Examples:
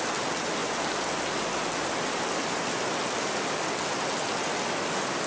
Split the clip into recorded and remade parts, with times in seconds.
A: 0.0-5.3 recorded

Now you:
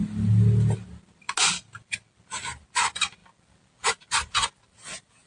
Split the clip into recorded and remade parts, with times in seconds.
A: 0.0-5.3 recorded

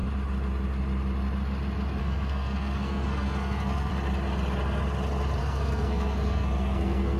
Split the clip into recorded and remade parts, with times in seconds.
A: 0.0-2.0 recorded; 2.0-3.9 remade; 3.9-5.4 recorded; 5.4-7.2 remade